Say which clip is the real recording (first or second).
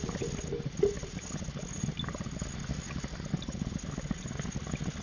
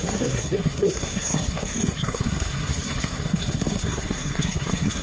first